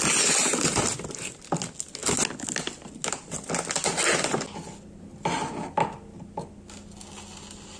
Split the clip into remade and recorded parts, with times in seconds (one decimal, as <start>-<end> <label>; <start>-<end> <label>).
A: 0.0-7.8 recorded